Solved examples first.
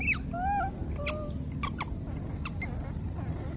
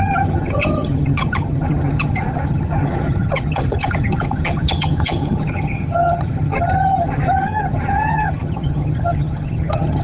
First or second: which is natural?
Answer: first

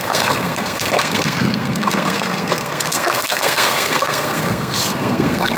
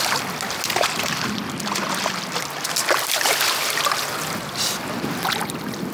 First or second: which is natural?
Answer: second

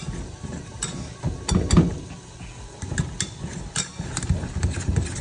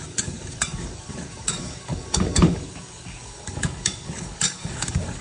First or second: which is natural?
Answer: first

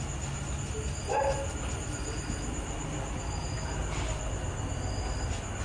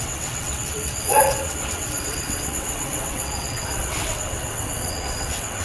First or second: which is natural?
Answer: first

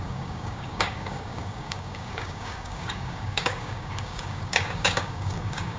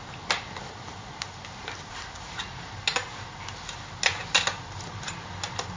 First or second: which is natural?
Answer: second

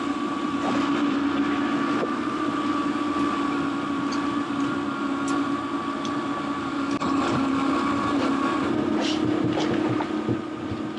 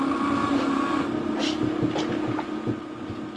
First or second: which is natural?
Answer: second